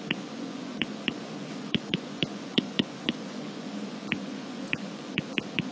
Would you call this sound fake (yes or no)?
yes